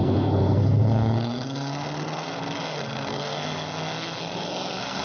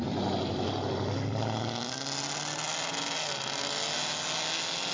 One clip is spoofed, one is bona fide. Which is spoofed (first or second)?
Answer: first